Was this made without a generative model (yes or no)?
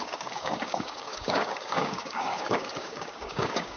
no